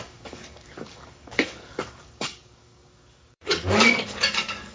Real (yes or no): no